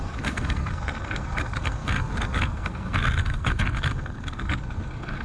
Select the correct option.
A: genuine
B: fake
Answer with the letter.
B